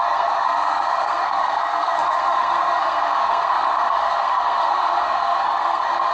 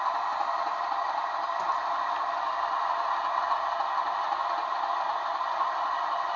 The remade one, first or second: first